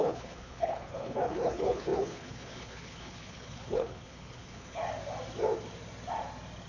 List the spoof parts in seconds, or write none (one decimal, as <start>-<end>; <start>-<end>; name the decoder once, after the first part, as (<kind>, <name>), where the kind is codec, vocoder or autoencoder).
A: 0.0-4.8 (codec, HILCodec)